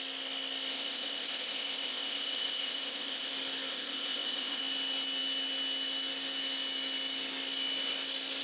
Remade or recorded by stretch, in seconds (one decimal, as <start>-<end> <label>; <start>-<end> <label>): 0.0-0.7 recorded; 0.7-3.3 remade; 3.3-3.7 recorded; 3.7-4.6 remade; 4.6-8.4 recorded